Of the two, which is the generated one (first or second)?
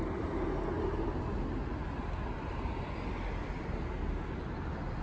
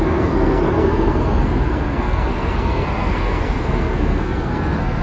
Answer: second